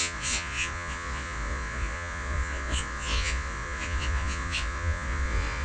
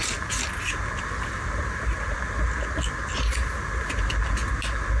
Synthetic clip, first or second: first